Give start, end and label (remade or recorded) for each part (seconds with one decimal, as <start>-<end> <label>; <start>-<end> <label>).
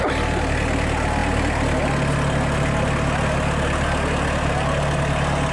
0.0-5.5 recorded